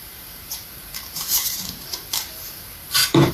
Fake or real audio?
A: fake